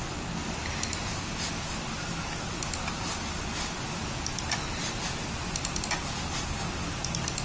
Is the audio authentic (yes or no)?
yes